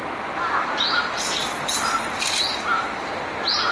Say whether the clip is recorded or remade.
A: recorded